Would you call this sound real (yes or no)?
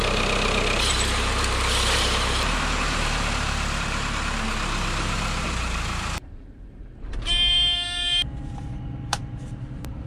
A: no